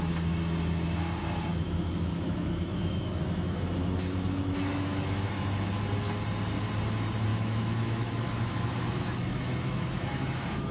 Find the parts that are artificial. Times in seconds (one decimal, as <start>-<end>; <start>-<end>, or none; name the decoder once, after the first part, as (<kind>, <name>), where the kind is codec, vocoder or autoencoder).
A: 1.5-5.8 (autoencoder, DAC-VAE); 7.3-10.7

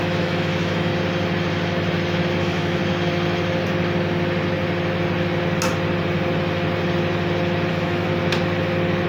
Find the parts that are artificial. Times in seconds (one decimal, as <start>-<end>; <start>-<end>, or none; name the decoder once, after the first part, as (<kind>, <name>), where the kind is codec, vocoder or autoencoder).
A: 0.0-0.9 (autoencoder, DAC-VAE); 2.4-2.8; 7.7-8.1